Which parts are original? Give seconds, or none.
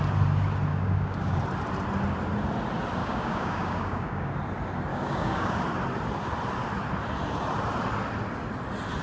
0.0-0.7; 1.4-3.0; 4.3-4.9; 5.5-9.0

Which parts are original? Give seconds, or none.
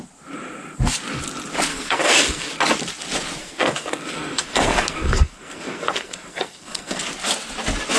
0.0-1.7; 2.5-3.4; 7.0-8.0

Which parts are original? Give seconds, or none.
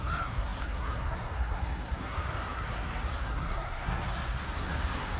none